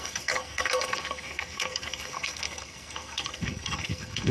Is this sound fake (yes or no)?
yes